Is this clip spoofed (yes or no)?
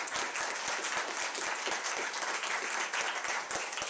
no